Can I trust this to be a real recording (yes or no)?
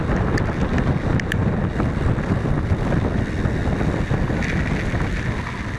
yes